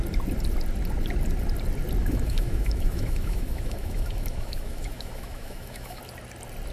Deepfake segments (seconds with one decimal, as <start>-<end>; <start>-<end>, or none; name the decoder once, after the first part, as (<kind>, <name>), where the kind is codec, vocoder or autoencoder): 2.0-6.0 (autoencoder, DAC-VAE)